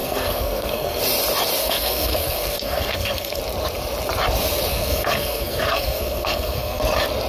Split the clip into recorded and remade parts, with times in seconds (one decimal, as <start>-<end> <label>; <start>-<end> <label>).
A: 0.0-1.0 remade; 1.0-1.6 recorded; 1.6-3.4 remade; 3.4-4.7 recorded; 4.7-6.8 remade; 6.8-7.3 recorded